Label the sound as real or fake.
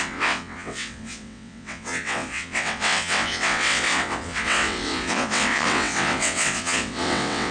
fake